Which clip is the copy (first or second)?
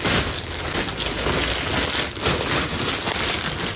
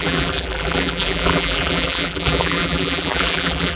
second